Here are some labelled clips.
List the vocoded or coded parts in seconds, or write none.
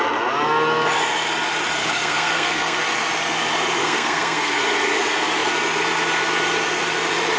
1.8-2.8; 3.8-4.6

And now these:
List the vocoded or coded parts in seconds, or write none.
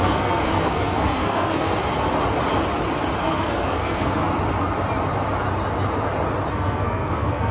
0.0-1.8; 3.2-4.2; 6.5-7.5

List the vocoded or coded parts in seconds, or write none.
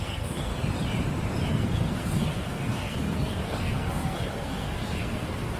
0.0-0.5; 1.5-5.6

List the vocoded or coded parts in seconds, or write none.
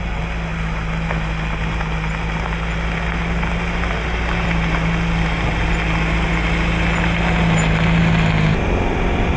none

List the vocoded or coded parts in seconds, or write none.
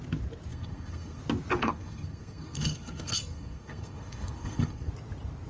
0.5-1.2; 1.6-4.9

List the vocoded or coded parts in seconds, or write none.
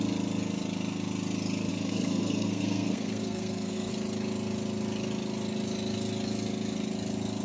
1.7-3.9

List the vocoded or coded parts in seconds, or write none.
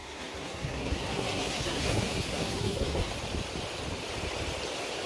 0.0-3.1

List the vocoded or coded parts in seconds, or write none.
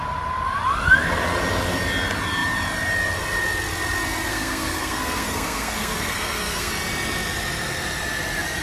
4.3-6.7